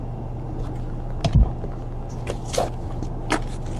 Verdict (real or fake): real